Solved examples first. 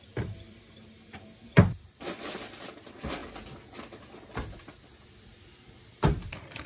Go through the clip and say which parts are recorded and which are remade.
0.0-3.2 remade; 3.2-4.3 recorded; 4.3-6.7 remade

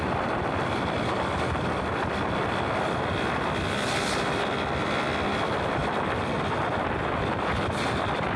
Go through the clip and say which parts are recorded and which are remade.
0.0-8.4 recorded

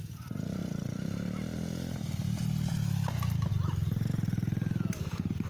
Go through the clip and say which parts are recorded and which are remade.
0.0-0.6 recorded; 0.6-3.5 remade; 3.5-5.5 recorded

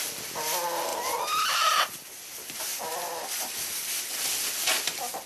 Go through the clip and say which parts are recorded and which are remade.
0.0-5.3 recorded

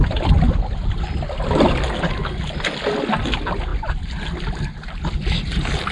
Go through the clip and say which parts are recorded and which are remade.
0.0-5.9 recorded

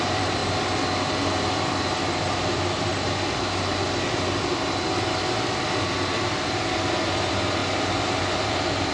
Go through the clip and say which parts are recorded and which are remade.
0.0-0.4 remade; 0.4-1.5 recorded; 1.5-2.9 remade; 2.9-6.2 recorded; 6.2-7.6 remade; 7.6-8.2 recorded; 8.2-8.9 remade

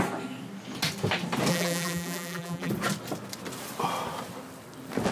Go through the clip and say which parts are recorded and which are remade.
0.0-1.5 recorded; 1.5-2.7 remade; 2.7-5.1 recorded